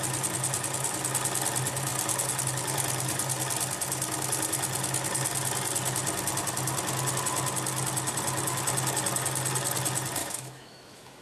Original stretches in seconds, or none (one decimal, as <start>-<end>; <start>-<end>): 0.0-10.2